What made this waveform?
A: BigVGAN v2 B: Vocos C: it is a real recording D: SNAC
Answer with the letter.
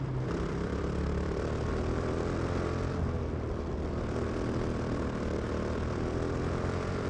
A